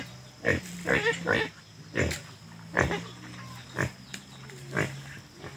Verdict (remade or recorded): recorded